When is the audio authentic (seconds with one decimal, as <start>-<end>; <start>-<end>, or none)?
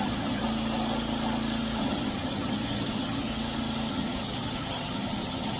0.4-1.8; 3.3-3.9